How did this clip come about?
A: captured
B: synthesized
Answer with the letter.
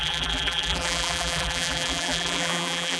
B